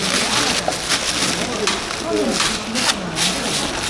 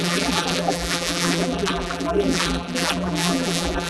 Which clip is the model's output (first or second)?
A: second